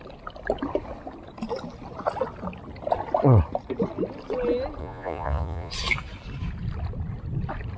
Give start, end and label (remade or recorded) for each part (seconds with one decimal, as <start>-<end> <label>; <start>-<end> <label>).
0.0-4.8 recorded; 4.8-5.7 remade; 5.7-7.8 recorded